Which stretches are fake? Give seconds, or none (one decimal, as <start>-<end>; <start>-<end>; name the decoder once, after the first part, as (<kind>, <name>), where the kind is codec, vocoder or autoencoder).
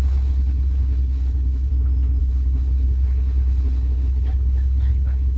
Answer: 0.0-1.7 (codec, HILCodec); 2.2-5.4